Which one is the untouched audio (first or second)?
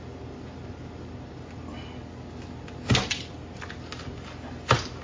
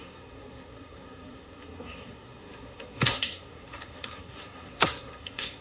first